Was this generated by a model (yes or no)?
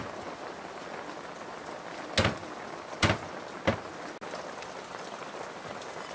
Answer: no